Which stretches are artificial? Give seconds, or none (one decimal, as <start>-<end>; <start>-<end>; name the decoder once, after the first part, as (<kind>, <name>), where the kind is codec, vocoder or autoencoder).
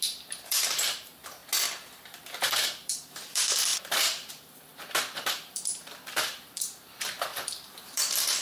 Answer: 0.0-1.4 (vocoder, BigVGAN v2); 2.4-8.4